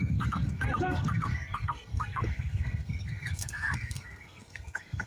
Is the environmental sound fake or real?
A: fake